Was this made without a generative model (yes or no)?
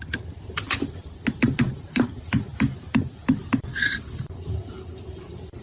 no